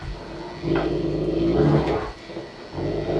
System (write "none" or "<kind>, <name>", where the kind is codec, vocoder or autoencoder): none